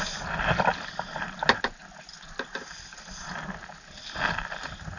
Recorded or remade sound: recorded